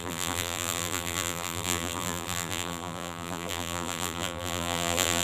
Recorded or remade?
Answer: remade